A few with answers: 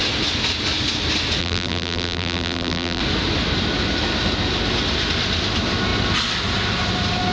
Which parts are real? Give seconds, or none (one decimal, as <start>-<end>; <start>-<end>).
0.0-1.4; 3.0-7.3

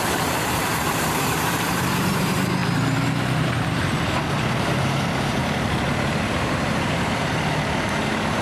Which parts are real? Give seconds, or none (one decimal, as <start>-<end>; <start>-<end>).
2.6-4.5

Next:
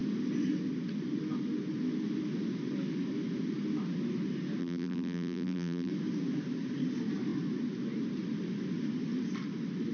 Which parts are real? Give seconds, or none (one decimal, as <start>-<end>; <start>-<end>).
0.0-4.6; 5.9-9.9